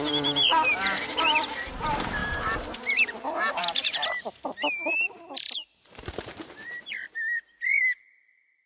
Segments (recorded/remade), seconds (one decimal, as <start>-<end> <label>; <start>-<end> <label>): 0.0-7.8 remade; 7.8-8.7 recorded